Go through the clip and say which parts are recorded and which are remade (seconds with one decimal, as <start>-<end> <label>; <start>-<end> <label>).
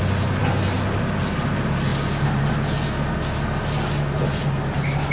0.0-5.1 recorded